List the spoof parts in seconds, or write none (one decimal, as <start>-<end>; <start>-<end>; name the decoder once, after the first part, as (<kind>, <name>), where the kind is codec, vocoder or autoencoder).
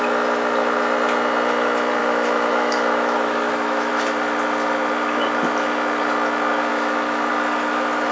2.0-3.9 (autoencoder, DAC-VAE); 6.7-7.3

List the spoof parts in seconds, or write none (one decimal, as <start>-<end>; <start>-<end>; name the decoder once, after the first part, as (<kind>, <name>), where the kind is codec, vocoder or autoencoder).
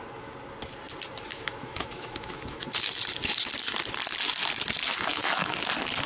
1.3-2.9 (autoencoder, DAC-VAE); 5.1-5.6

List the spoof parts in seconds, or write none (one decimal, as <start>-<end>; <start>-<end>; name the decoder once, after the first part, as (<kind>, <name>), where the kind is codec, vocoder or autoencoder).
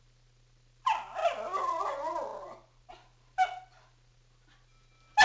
none